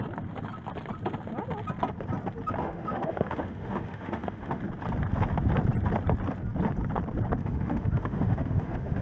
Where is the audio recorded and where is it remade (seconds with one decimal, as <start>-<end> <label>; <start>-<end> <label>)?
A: 0.0-2.6 recorded; 2.6-4.6 remade; 4.6-7.4 recorded; 7.4-9.0 remade